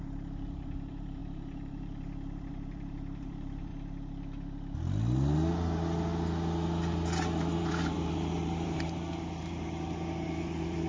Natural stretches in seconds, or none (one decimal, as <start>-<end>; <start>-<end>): 3.7-7.6